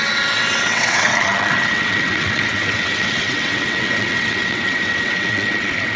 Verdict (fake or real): fake